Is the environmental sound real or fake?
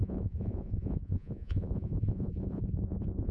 fake